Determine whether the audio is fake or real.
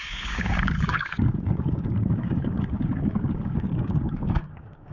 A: fake